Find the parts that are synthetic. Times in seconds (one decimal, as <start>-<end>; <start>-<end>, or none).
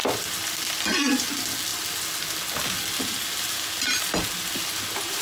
none